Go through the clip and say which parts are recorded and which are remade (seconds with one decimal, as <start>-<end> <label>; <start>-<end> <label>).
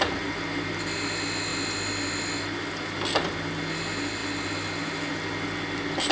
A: 0.0-6.1 recorded